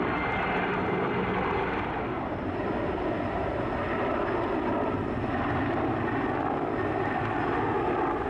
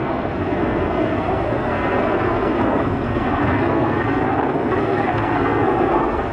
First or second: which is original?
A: first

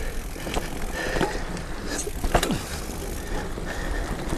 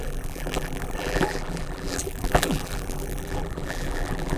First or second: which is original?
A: first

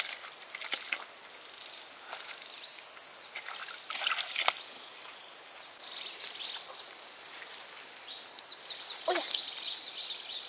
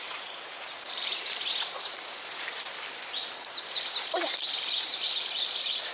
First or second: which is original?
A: first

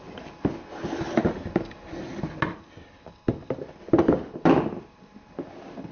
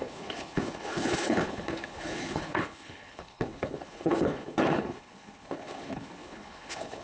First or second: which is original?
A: first